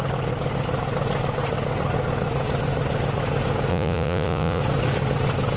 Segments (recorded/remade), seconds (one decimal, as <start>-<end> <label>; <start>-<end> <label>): 0.0-3.7 recorded; 3.7-4.6 remade; 4.6-5.6 recorded